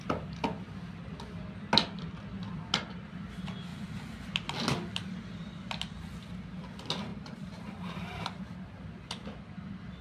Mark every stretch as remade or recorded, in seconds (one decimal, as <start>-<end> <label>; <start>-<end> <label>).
0.0-3.7 recorded; 3.7-4.3 remade; 4.3-7.1 recorded; 7.1-8.4 remade; 8.4-10.0 recorded